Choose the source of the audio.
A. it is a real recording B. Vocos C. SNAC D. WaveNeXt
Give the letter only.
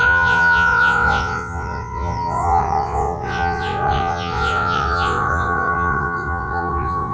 D